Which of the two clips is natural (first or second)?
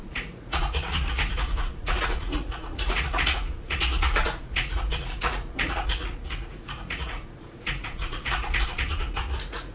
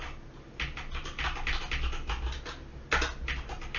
second